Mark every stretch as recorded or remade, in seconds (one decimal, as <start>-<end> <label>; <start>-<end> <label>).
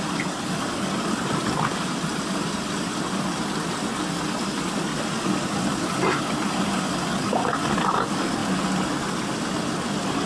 0.0-4.9 remade; 4.9-6.6 recorded; 6.6-10.3 remade